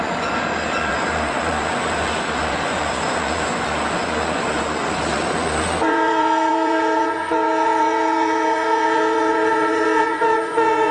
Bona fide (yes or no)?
no